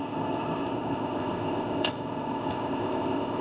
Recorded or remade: remade